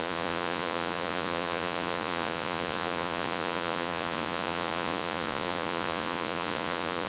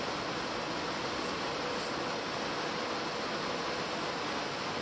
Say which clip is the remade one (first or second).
first